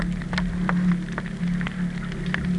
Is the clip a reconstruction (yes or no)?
no